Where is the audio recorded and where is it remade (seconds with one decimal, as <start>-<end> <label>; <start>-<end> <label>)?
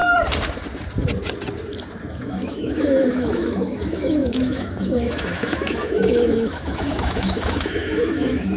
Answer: 0.0-2.2 recorded; 2.2-8.6 remade